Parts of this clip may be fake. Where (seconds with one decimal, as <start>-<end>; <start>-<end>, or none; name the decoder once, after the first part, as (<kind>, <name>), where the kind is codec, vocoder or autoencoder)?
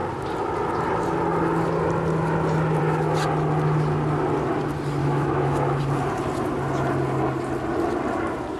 5.0-5.8 (autoencoder, DAC-VAE)